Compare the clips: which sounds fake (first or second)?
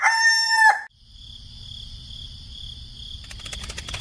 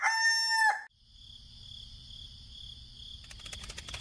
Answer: first